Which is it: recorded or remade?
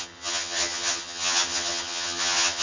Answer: remade